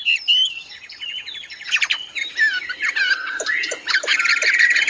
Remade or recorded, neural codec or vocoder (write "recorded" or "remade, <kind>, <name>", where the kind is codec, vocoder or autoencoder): recorded